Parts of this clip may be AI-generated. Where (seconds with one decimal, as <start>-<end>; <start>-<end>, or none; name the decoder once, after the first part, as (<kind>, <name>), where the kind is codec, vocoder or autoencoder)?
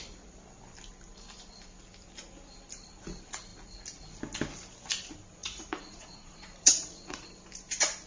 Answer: 5.4-7.3 (vocoder, Vocos)